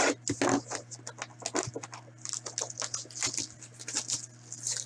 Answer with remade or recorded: recorded